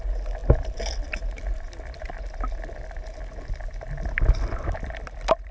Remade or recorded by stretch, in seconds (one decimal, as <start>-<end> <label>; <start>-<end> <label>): 0.0-5.5 recorded